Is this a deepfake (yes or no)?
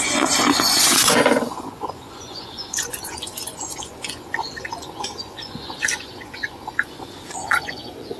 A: yes